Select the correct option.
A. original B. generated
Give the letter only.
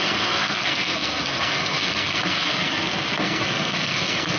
B